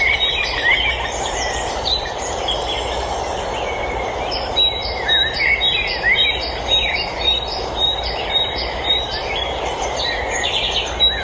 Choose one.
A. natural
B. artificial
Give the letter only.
B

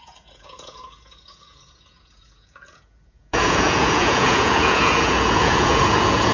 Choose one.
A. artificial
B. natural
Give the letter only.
A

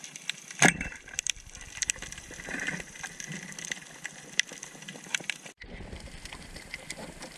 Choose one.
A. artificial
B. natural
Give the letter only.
A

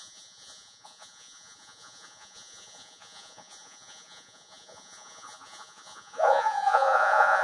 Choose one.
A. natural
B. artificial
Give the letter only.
B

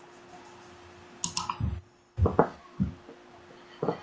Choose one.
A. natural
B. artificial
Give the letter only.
A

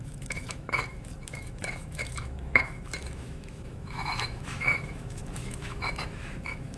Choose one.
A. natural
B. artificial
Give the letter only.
B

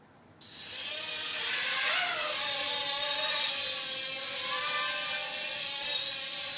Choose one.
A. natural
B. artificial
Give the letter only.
A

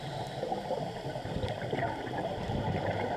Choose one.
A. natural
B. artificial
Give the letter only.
B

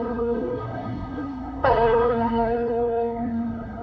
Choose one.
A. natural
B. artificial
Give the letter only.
B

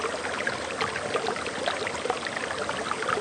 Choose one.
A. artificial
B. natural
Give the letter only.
B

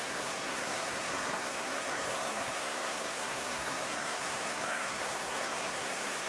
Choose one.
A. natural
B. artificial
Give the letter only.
B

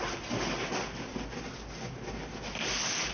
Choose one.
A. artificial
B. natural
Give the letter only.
B